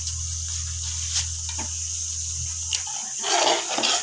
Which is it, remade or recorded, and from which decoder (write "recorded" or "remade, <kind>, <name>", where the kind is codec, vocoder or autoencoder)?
recorded